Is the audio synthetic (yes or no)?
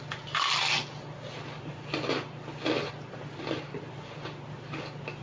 no